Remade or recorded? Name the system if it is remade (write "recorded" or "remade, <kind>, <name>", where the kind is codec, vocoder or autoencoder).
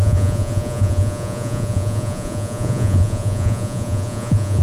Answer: remade, vocoder, Vocos